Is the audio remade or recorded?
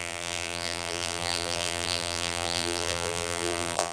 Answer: remade